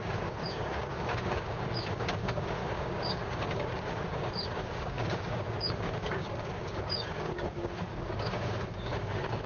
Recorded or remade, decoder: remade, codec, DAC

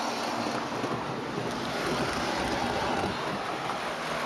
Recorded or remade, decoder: recorded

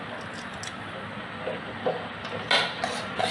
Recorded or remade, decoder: recorded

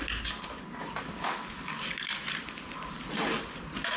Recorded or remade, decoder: recorded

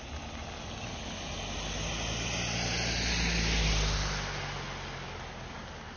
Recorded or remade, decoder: recorded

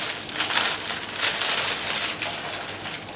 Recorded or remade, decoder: recorded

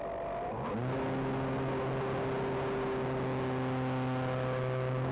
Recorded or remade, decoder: recorded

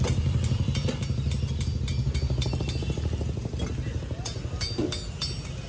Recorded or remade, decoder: recorded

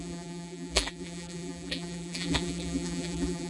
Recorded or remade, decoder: remade, vocoder, BigVGAN v2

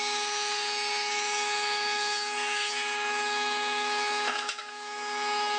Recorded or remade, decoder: remade, autoencoder, DAC-VAE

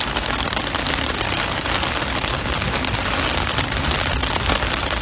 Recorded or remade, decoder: recorded